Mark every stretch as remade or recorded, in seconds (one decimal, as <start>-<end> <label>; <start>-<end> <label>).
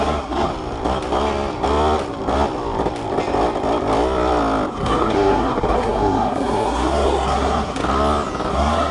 0.0-0.5 remade; 0.5-4.7 recorded; 4.7-7.8 remade; 7.8-8.5 recorded; 8.5-8.9 remade